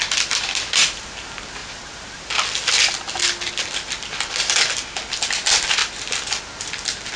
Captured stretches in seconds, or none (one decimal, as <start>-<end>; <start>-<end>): 0.0-7.2